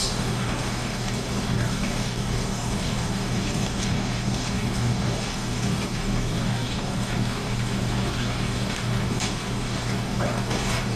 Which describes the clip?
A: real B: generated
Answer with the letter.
B